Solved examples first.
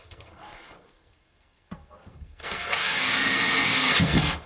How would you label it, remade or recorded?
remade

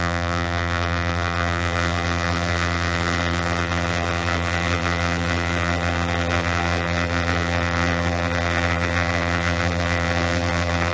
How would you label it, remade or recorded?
remade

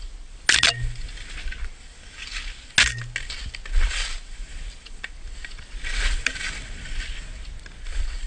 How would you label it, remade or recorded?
recorded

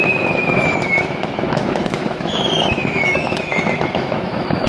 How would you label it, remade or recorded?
remade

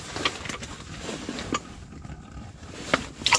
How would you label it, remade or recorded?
recorded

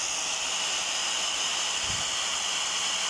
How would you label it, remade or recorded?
recorded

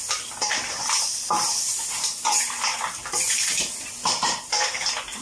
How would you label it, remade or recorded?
recorded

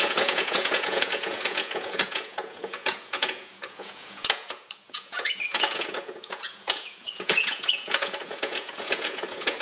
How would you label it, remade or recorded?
remade